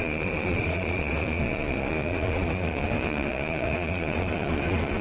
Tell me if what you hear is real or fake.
fake